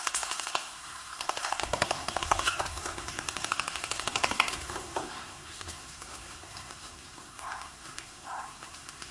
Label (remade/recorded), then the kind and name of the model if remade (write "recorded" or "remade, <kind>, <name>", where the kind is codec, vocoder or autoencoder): remade, codec, SNAC